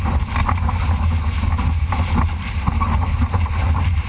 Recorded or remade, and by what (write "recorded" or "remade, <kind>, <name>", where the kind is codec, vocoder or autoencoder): recorded